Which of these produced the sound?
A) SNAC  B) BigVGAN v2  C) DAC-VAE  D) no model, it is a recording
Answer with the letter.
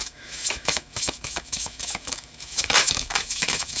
C